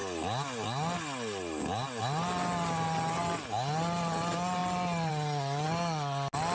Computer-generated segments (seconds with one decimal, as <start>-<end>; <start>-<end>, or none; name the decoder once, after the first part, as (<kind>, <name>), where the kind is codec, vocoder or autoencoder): none